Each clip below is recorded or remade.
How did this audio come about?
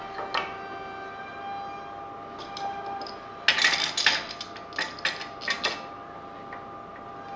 recorded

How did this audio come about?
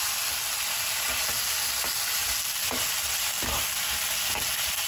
recorded